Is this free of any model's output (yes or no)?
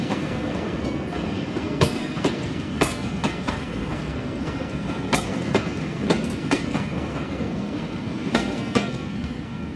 no